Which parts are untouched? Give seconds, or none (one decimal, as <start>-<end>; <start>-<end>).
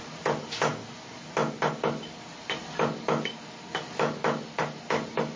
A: 0.0-5.4